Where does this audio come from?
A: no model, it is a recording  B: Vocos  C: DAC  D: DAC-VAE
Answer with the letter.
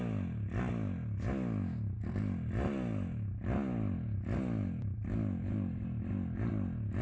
A